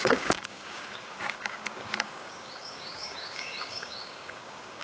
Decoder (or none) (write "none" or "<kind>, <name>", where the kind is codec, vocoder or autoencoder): codec, DAC